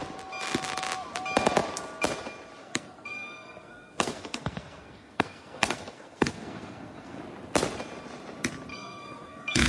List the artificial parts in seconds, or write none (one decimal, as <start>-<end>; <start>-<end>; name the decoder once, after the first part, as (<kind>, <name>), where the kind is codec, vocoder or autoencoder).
2.6-7.2 (codec, SNAC); 8.7-9.7